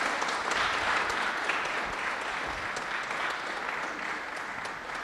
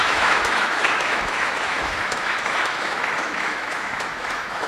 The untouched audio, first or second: first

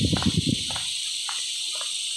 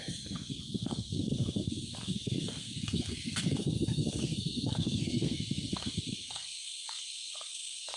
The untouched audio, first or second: first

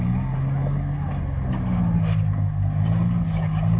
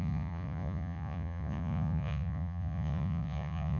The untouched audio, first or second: first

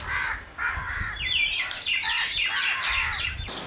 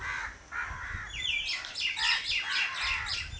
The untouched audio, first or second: second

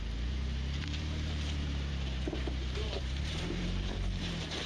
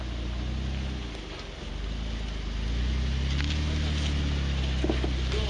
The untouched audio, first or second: second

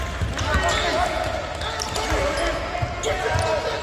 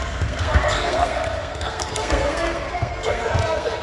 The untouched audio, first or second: first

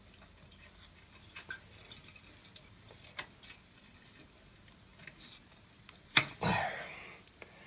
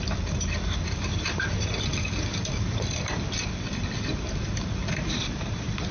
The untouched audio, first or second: first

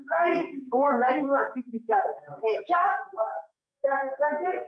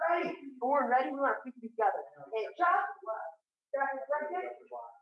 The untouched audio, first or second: second